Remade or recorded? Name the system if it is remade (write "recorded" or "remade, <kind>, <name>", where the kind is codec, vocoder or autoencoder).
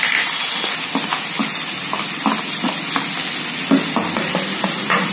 recorded